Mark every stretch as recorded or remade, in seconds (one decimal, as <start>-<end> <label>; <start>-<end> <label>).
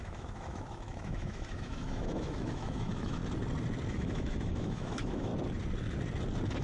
0.0-3.2 remade; 3.2-3.9 recorded; 3.9-5.3 remade; 5.3-6.6 recorded